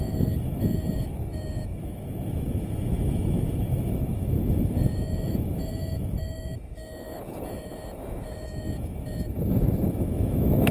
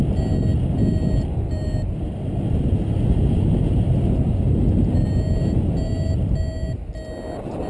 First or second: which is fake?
first